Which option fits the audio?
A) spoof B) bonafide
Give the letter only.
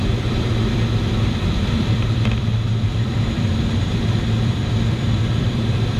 A